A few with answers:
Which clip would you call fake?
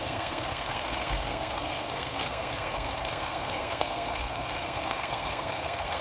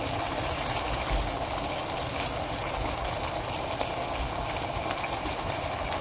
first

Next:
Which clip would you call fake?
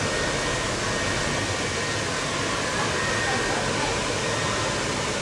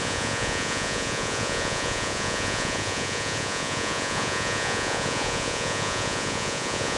second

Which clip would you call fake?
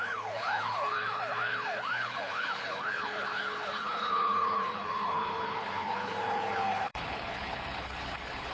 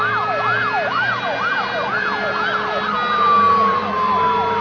first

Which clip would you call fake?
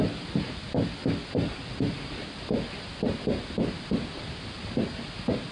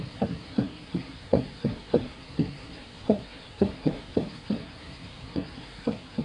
second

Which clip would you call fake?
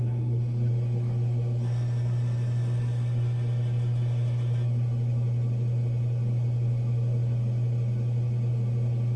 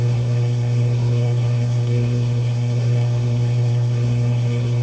second